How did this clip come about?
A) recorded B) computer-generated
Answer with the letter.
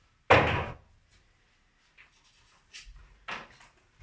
A